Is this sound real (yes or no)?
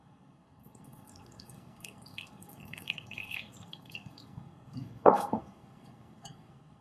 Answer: no